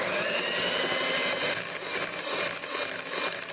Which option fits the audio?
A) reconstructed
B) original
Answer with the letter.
B